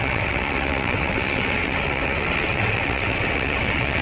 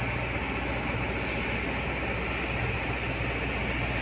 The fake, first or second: first